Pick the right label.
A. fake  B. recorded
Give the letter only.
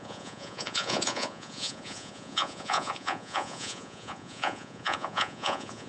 A